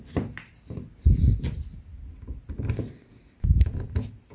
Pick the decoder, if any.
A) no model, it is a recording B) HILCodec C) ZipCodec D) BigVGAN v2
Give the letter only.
A